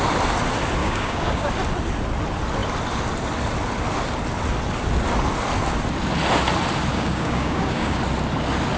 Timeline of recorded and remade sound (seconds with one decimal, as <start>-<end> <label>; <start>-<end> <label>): 0.0-0.8 recorded; 0.8-1.5 remade; 1.5-6.9 recorded; 6.9-8.0 remade; 8.0-8.8 recorded